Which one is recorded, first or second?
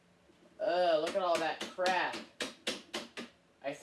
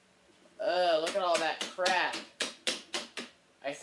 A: first